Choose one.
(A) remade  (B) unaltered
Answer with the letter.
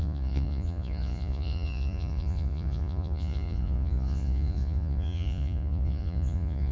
A